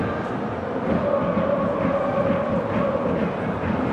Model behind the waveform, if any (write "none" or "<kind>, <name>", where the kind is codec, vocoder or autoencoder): none